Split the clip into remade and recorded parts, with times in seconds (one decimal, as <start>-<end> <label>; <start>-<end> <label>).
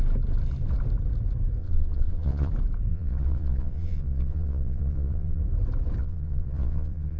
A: 0.0-1.6 recorded; 1.6-2.5 remade; 2.5-2.9 recorded; 2.9-5.4 remade; 5.4-6.0 recorded; 6.0-7.2 remade